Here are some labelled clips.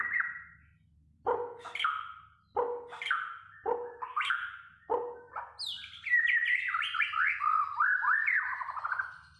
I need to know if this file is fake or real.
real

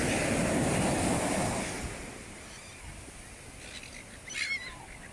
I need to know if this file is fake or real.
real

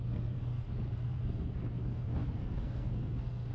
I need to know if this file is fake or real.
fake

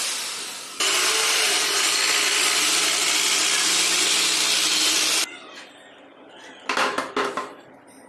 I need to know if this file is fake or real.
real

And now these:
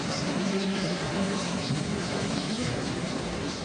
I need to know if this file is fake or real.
fake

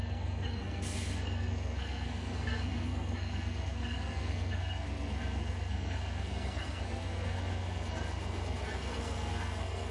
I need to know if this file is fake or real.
fake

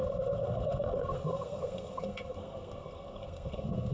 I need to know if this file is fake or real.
fake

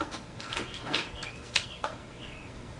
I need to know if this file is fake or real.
fake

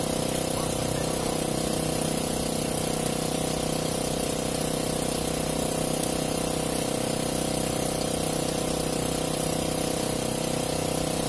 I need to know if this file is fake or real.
real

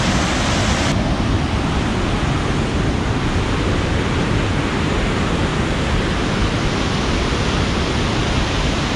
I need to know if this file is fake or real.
real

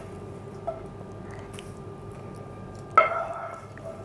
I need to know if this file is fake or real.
real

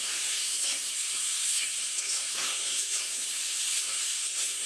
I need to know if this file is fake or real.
fake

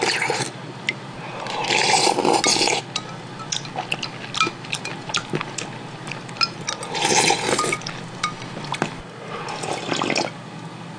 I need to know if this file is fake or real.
real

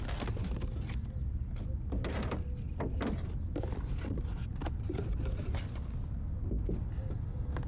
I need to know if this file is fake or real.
real